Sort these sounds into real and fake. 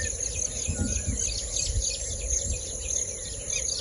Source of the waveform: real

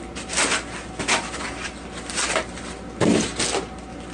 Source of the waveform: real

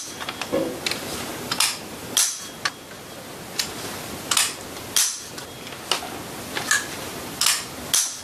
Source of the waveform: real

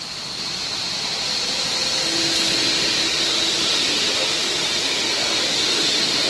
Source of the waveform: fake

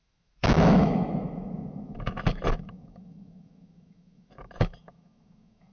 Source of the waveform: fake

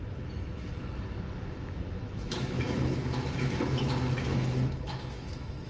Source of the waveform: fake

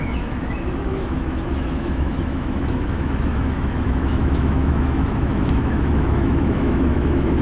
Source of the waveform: fake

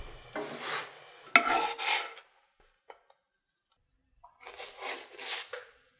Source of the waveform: real